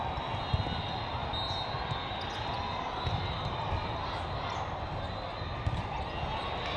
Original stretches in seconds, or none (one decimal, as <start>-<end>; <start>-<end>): 0.0-6.8